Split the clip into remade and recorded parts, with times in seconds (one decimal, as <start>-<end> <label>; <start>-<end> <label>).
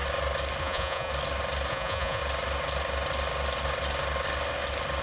0.0-0.6 recorded; 0.6-1.1 remade; 1.1-1.7 recorded; 1.7-2.2 remade; 2.2-5.0 recorded